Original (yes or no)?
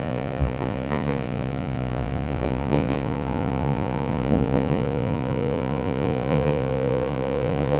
no